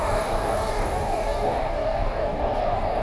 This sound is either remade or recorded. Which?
remade